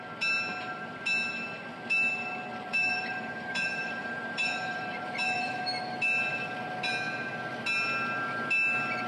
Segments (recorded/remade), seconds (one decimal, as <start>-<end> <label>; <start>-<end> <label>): 0.0-2.5 recorded; 2.5-5.6 remade; 5.6-9.1 recorded